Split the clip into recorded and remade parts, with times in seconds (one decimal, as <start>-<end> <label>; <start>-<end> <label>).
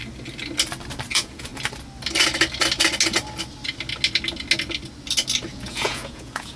0.0-1.1 recorded; 1.1-1.5 remade; 1.5-5.5 recorded; 5.5-6.6 remade